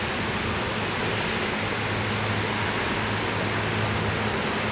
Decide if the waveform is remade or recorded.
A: recorded